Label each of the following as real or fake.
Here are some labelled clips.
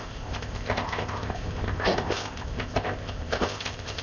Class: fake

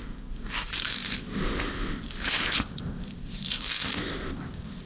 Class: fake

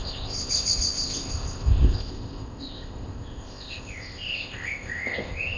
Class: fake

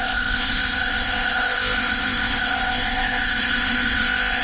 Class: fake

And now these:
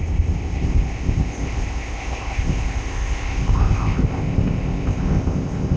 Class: fake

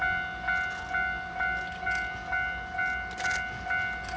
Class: real